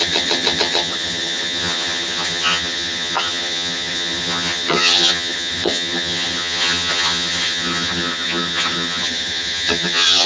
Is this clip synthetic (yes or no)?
yes